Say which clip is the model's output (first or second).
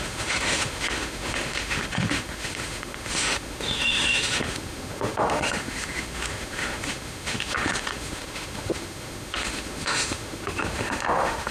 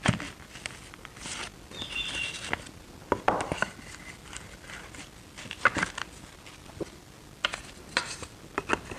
first